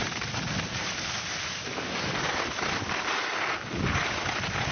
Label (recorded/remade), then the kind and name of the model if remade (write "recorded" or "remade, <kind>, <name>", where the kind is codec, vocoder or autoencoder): recorded